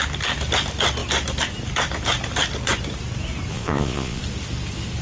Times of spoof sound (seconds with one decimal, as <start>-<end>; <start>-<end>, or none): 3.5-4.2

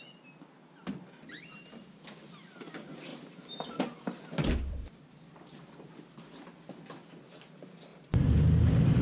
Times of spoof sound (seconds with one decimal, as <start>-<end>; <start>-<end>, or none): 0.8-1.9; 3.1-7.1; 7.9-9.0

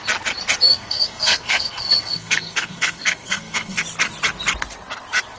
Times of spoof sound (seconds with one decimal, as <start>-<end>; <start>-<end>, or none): 0.7-3.8